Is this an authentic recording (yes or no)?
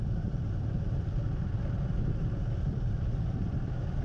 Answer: no